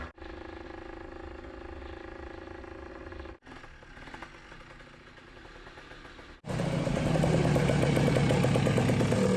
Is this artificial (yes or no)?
no